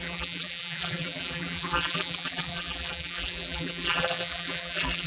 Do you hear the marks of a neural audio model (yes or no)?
yes